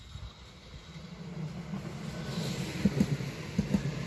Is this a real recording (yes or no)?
yes